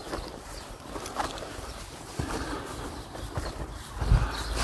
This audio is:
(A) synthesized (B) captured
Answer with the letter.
B